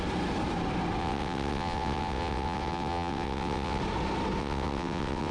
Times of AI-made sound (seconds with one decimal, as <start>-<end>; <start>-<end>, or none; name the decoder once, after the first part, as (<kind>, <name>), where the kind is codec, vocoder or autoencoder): 1.0-3.8 (vocoder, WaveNeXt); 4.4-5.3